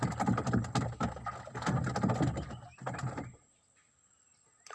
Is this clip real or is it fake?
real